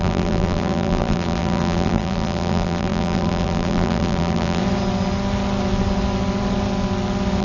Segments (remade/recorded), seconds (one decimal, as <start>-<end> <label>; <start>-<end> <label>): 0.0-4.6 remade; 4.6-7.4 recorded